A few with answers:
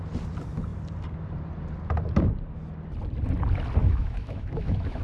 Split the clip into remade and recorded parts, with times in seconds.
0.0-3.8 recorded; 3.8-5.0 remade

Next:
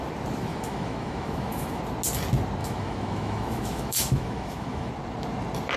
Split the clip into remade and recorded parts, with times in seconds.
0.0-0.5 recorded; 0.5-1.8 remade; 1.8-2.6 recorded; 2.6-4.9 remade; 4.9-5.8 recorded

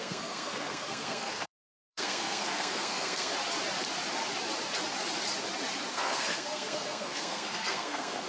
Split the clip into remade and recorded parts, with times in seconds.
0.0-3.3 remade; 3.3-5.9 recorded; 5.9-8.3 remade

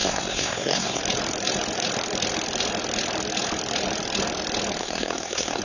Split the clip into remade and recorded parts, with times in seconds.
0.0-1.0 remade; 1.0-4.8 recorded; 4.8-5.6 remade